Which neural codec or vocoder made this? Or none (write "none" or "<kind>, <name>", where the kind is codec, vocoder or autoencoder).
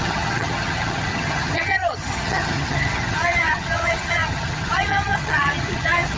vocoder, HiFi-GAN